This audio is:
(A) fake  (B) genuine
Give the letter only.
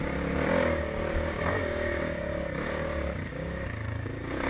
A